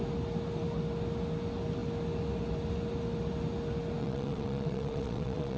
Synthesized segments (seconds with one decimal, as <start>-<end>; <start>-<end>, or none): 4.0-5.6